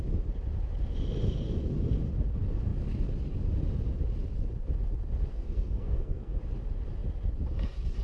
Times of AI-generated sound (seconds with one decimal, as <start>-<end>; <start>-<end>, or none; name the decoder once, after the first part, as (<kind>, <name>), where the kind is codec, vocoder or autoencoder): 5.3-6.4 (codec, SNAC)